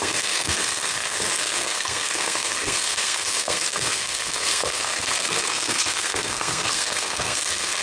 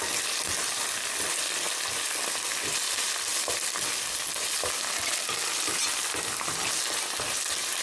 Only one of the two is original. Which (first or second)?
second